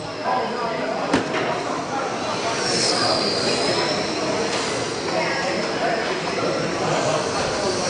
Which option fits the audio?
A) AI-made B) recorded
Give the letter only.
B